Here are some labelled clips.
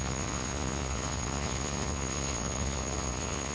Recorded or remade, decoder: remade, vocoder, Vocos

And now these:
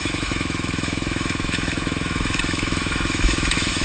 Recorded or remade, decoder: remade, autoencoder, DAC-VAE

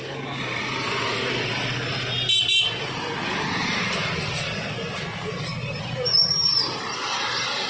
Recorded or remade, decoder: recorded